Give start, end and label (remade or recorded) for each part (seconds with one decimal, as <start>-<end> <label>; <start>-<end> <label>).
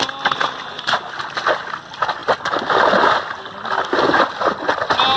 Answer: 0.0-5.2 recorded